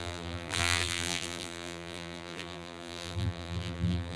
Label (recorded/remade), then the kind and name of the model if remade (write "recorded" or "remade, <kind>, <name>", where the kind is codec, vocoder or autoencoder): remade, vocoder, BigVGAN v2